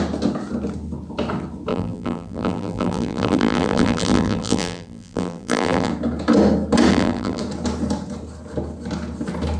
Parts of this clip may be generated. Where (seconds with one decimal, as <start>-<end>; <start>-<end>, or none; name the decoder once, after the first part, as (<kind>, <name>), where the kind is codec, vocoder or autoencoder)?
1.7-5.9 (vocoder, BigVGAN v2); 6.9-7.4